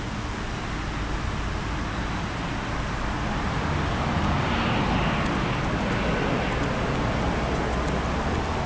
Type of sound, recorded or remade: recorded